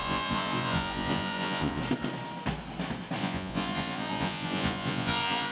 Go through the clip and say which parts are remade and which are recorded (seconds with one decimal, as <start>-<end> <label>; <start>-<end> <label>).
0.0-1.8 remade; 1.8-3.2 recorded; 3.2-5.5 remade